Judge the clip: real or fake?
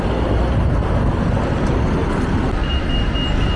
real